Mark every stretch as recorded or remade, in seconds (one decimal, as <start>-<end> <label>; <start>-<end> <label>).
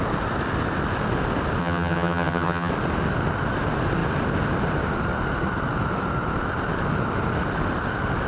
0.0-1.6 recorded; 1.6-2.7 remade; 2.7-8.3 recorded